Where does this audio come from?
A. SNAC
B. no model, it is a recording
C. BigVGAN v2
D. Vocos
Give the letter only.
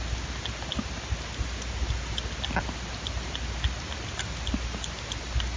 B